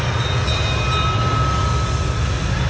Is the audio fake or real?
real